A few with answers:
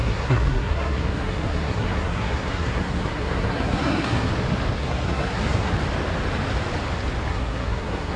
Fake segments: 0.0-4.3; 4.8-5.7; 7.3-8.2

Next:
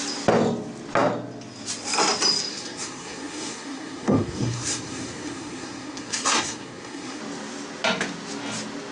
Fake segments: 2.5-7.2

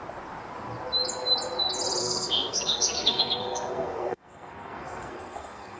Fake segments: 2.0-5.8